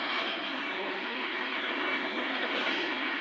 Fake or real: fake